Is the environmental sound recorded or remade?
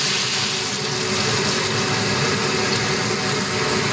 recorded